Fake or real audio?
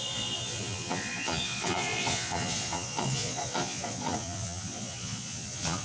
fake